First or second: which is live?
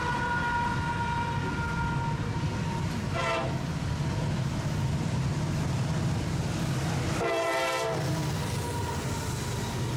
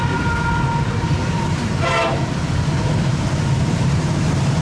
first